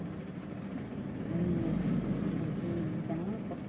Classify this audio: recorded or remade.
recorded